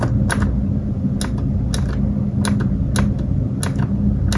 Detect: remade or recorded recorded